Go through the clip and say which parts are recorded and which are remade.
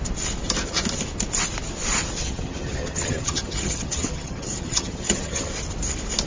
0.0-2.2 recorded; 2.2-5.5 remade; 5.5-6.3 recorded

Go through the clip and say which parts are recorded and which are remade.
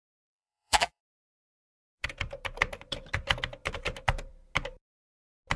0.0-1.0 remade; 1.0-5.6 recorded